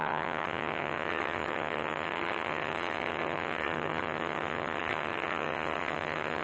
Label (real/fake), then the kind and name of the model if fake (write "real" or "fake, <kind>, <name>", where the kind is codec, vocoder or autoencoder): fake, vocoder, HiFi-GAN